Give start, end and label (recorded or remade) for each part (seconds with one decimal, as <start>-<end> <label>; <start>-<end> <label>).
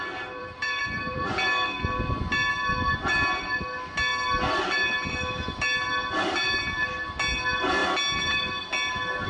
0.0-0.4 recorded; 0.4-1.3 remade; 1.3-9.3 recorded